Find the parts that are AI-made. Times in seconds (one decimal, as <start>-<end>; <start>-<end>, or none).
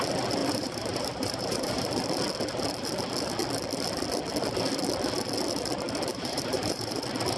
0.4-1.9; 6.1-7.0